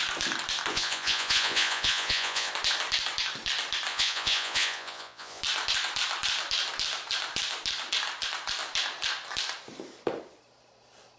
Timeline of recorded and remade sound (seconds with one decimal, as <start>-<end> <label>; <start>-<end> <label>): 0.0-0.7 recorded; 0.7-2.5 remade; 2.5-3.9 recorded; 3.9-5.4 remade; 5.4-11.2 recorded